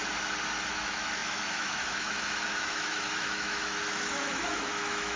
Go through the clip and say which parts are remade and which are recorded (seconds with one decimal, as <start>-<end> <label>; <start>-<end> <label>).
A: 0.0-0.7 recorded; 0.7-5.2 remade